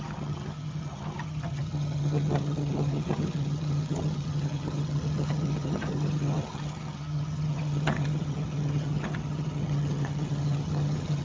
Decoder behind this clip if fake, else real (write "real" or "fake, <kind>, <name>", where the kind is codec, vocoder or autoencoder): fake, vocoder, HiFi-GAN